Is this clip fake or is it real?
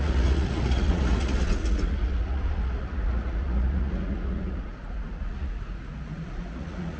fake